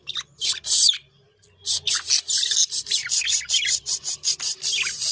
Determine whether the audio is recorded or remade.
recorded